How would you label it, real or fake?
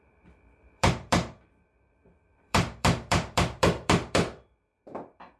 fake